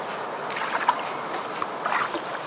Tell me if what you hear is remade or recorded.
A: recorded